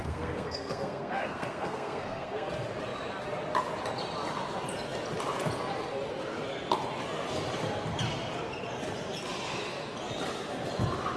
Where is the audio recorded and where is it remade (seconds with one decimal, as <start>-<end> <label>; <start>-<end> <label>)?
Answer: 0.0-2.5 remade; 2.5-11.2 recorded